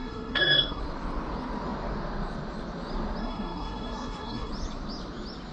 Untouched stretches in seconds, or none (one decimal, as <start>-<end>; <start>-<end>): 0.8-3.2; 4.5-5.5